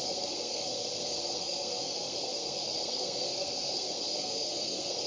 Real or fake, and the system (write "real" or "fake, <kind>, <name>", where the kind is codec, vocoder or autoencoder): fake, codec, SNAC